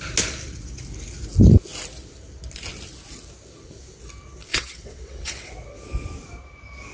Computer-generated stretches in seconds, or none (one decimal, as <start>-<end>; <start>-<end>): 4.5-5.5